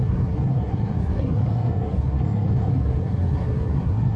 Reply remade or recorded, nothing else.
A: remade